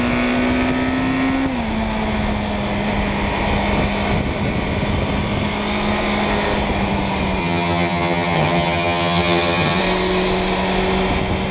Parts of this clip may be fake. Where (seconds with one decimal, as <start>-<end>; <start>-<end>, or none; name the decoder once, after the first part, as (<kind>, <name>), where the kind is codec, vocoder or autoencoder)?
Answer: 7.4-9.8 (vocoder, HiFi-GAN)